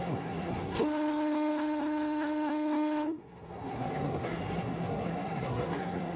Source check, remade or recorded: remade